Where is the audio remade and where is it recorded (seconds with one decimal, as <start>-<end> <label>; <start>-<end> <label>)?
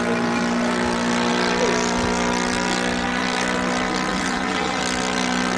0.0-4.1 recorded; 4.1-4.8 remade; 4.8-5.6 recorded